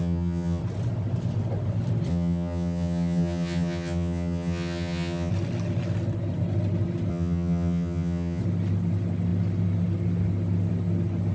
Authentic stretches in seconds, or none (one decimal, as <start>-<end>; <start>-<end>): 0.6-2.1; 5.3-7.1; 8.4-11.3